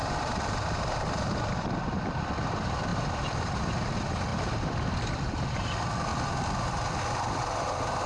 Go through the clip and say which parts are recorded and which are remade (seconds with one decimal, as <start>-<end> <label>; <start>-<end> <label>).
0.0-2.2 remade; 2.2-4.3 recorded; 4.3-4.9 remade; 4.9-8.1 recorded